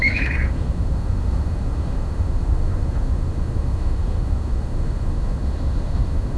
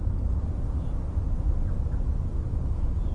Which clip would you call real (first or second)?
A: second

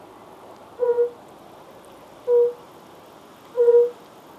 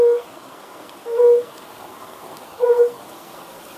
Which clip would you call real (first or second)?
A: first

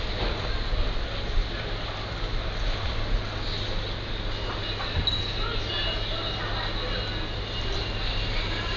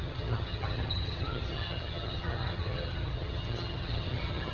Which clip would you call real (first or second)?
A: first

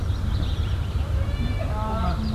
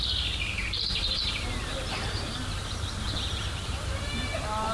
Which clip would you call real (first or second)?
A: first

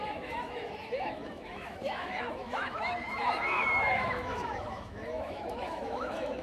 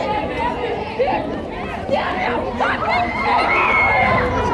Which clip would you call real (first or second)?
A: second